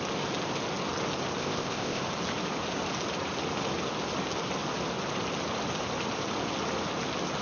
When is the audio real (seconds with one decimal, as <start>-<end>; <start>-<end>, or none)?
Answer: 0.0-1.4; 2.0-7.4